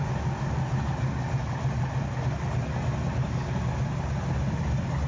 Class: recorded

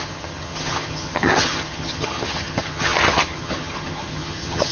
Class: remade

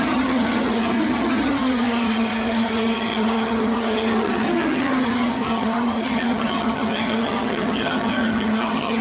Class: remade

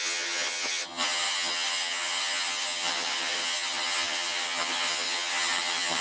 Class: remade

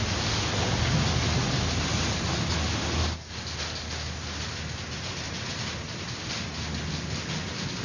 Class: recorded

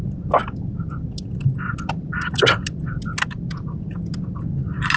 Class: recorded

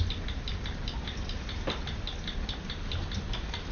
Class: recorded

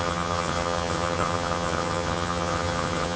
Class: remade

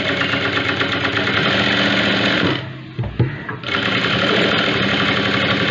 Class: recorded